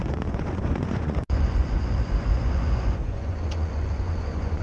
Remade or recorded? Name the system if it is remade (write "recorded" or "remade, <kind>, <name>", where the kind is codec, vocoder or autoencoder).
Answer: remade, vocoder, Vocos